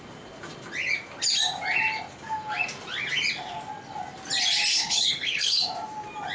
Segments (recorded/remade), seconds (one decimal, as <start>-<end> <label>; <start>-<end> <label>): 0.0-4.7 recorded; 4.7-5.6 remade; 5.6-6.3 recorded